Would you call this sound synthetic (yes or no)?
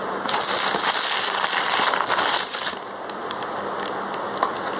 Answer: no